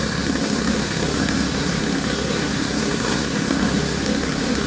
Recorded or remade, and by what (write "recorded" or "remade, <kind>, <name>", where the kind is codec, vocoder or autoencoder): remade, codec, SNAC